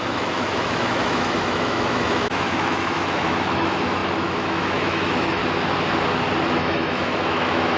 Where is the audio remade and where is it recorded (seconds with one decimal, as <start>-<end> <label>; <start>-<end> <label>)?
0.0-5.4 remade; 5.4-6.5 recorded; 6.5-7.8 remade